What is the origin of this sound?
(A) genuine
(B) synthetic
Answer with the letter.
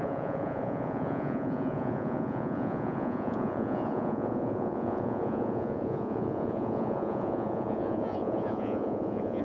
B